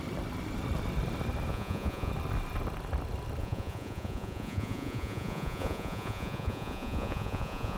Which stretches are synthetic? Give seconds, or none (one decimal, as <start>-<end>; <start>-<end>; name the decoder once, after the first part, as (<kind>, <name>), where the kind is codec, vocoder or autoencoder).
1.5-2.1 (vocoder, Vocos); 3.4-7.8